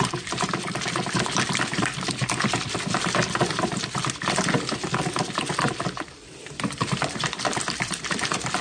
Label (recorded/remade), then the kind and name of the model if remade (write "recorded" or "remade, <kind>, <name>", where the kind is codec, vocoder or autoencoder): remade, vocoder, BigVGAN v2